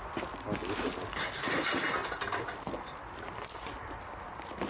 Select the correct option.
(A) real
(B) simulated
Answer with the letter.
A